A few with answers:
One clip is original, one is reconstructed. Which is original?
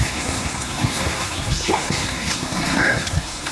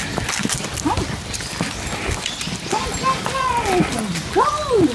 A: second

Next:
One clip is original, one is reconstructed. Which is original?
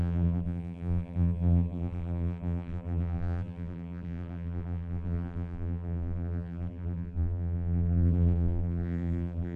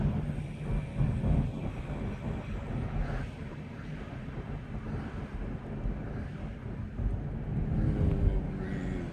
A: second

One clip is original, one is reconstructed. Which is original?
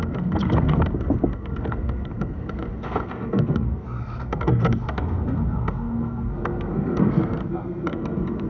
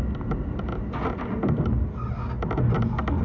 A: second